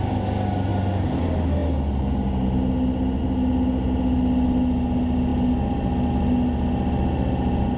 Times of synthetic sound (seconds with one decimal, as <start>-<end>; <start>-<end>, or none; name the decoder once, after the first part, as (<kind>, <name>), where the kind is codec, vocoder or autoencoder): none